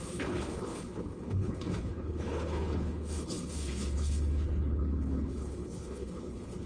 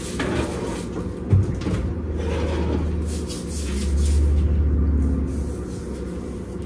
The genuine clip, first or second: second